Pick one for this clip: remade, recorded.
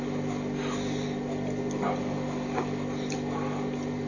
recorded